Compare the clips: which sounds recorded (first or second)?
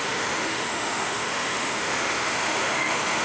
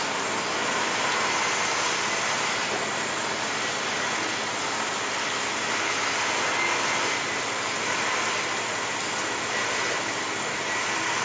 second